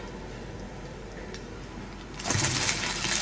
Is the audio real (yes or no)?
yes